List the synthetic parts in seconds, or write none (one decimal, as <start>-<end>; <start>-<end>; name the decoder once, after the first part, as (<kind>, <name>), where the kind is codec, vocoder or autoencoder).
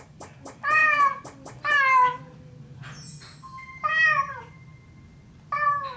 none